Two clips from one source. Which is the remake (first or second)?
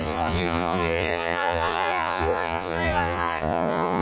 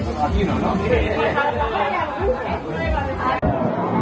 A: first